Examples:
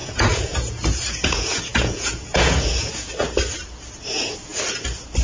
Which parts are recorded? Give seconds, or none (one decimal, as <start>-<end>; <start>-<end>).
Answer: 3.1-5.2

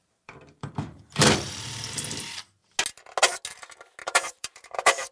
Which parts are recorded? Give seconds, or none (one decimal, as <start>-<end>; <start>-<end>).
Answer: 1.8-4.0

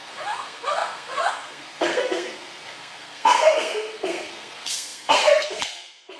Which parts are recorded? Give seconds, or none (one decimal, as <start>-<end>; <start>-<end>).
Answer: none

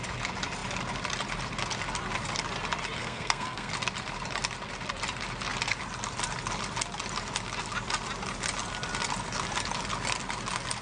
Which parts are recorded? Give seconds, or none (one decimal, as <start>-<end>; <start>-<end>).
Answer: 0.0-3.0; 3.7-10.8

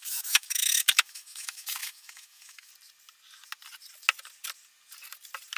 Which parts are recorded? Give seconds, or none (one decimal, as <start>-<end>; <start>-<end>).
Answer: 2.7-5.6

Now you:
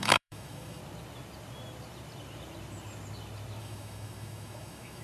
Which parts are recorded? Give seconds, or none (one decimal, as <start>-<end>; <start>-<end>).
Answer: 0.8-3.6

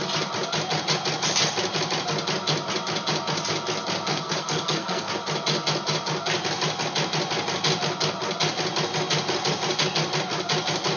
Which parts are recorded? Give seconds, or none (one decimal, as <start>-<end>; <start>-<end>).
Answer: 0.0-4.1; 5.1-11.0

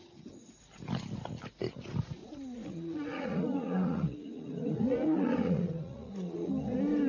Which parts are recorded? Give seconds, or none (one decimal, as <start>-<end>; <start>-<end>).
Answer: 0.0-2.2; 6.5-7.1